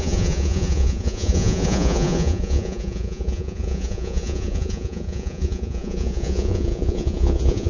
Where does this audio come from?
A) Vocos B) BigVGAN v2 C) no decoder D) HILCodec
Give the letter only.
A